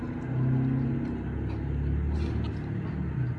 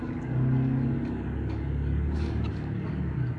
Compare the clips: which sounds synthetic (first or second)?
second